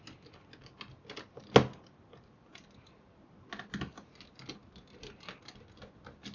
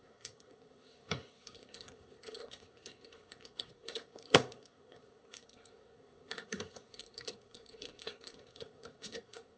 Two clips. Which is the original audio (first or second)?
first